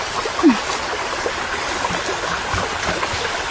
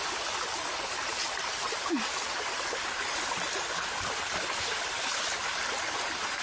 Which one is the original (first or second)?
first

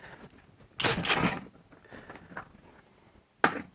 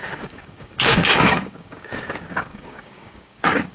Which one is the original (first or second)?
first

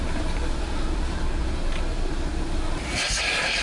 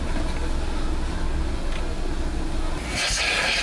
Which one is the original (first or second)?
second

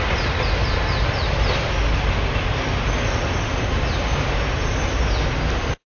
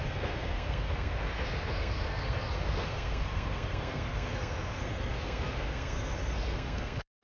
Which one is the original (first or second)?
first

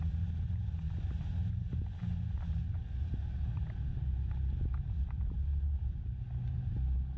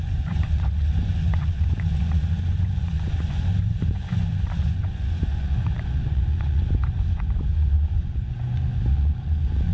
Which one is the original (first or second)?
first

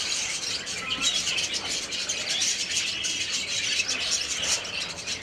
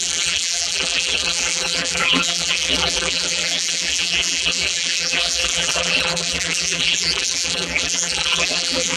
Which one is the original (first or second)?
first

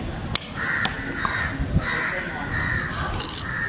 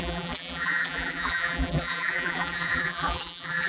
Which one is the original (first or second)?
first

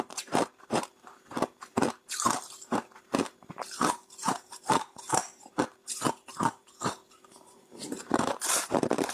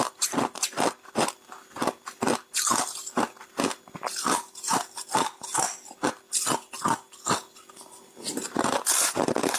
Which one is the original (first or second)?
second